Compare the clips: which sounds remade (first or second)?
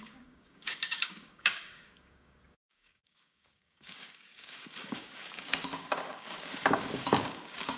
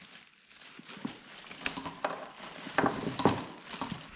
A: first